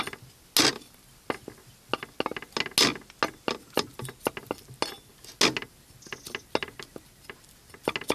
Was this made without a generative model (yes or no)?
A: yes